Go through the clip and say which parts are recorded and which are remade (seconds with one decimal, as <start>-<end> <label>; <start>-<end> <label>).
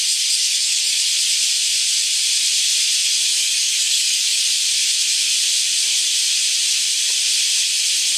0.0-0.4 recorded; 0.4-1.0 remade; 1.0-3.3 recorded; 3.3-4.6 remade; 4.6-8.2 recorded